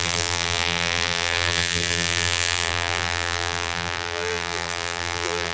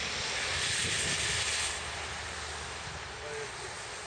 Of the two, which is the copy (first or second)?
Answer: first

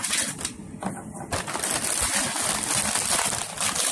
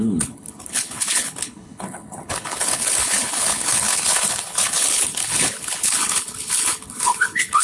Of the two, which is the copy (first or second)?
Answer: second